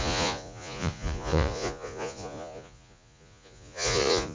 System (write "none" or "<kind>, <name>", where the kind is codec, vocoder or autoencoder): vocoder, Vocos